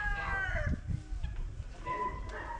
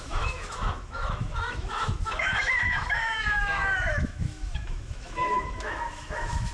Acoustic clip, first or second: first